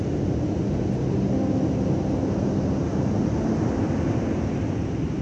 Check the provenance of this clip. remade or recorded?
recorded